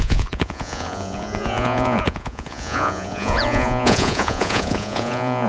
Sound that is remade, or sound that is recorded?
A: remade